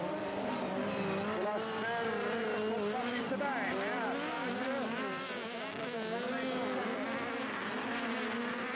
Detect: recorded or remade recorded